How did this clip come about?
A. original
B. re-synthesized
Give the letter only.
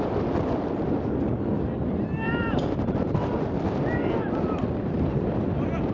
B